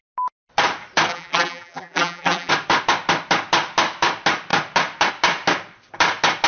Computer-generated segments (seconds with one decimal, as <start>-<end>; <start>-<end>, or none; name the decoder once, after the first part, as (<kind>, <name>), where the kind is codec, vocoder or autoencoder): 1.1-2.5 (vocoder, BigVGAN v2)